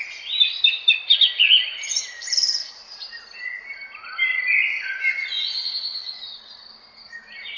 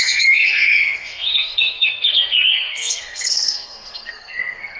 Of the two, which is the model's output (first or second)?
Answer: second